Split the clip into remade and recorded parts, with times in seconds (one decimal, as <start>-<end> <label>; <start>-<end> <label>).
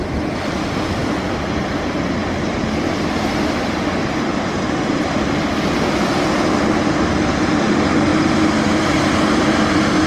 0.0-1.0 recorded; 1.0-3.9 remade; 3.9-10.1 recorded